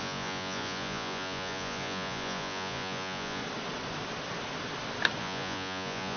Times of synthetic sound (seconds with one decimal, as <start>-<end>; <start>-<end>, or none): 0.0-3.4; 5.2-6.2